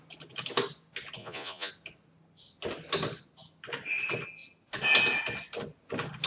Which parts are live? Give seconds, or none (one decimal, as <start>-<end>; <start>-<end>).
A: 0.0-1.2; 1.7-6.3